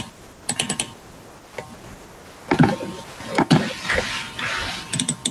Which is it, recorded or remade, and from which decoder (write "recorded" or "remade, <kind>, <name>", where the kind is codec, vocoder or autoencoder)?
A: recorded